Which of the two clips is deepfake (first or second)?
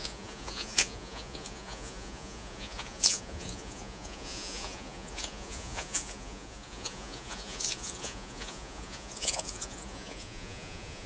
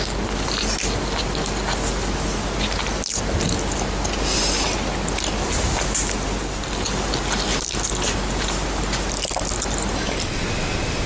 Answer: first